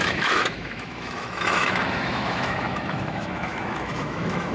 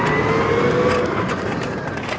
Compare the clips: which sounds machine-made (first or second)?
first